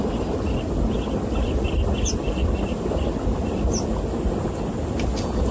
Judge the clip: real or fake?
real